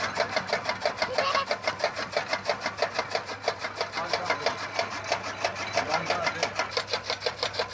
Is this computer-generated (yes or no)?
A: no